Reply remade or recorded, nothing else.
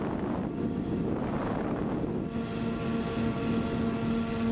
recorded